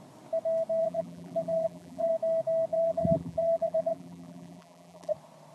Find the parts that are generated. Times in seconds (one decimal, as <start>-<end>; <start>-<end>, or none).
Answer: 0.8-2.1; 2.7-5.1